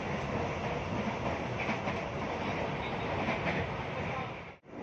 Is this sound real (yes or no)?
yes